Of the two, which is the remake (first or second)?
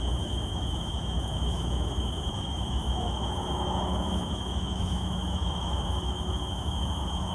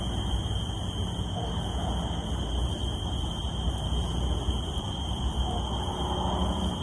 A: first